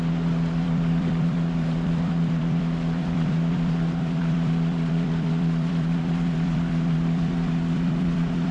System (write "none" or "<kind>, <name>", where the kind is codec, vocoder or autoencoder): vocoder, BigVGAN v2